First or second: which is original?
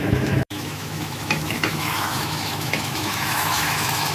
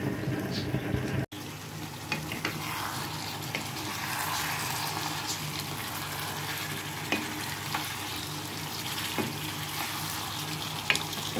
second